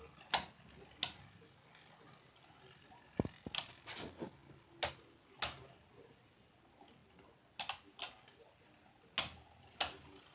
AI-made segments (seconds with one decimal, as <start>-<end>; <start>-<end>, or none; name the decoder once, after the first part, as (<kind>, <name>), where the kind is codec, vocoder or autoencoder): none